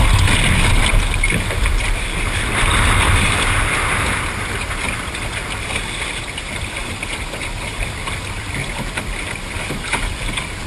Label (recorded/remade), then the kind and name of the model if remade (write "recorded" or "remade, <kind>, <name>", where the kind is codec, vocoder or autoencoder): recorded